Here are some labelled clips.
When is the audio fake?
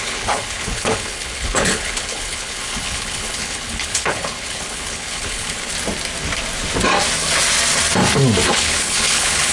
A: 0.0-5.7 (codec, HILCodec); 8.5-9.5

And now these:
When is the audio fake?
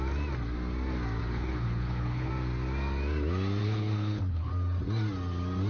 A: 1.2-2.3 (codec, HILCodec); 3.6-4.5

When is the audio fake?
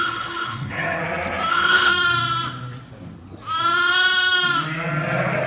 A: 0.0-1.0 (codec, HILCodec); 1.5-1.9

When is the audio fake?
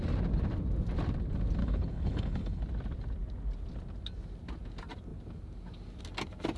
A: 1.6-2.6 (codec, HILCodec)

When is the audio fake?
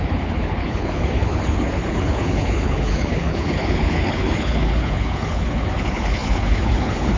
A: 0.0-7.2 (codec, HILCodec)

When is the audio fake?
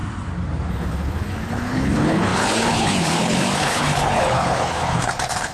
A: 0.7-5.5 (codec, HILCodec)